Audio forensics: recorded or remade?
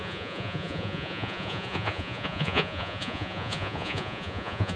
remade